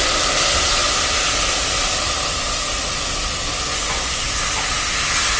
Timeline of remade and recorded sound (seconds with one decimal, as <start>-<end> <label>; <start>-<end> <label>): 0.0-3.7 recorded; 3.7-4.4 remade; 4.4-5.4 recorded